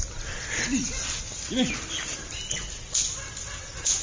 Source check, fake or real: real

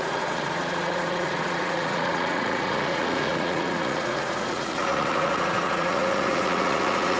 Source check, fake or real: fake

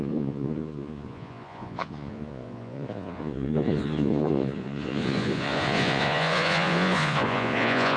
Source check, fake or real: fake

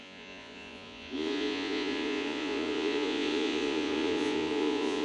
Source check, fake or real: fake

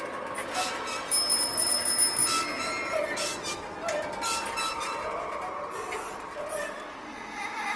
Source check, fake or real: real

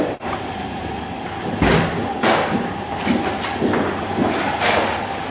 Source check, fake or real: real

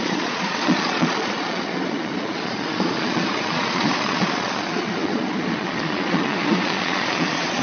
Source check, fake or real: fake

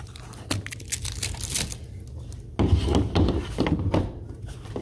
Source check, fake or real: real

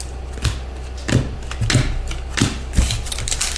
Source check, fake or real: real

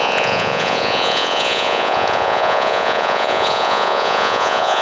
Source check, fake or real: fake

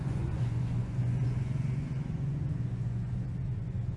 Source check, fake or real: fake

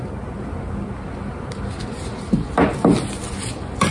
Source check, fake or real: real